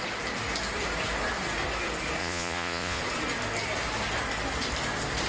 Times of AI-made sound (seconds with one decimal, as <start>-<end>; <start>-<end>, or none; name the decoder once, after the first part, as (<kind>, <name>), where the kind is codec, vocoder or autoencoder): 2.2-3.0 (vocoder, Vocos)